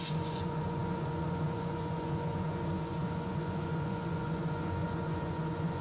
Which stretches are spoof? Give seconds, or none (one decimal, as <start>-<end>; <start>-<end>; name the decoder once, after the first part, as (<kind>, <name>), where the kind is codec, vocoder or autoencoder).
0.0-5.8 (vocoder, Vocos)